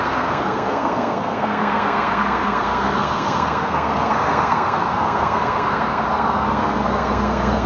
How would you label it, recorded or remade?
remade